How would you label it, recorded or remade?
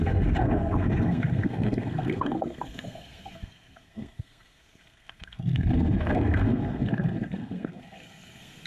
remade